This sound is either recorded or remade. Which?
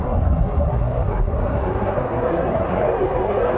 remade